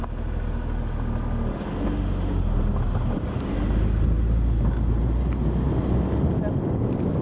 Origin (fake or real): real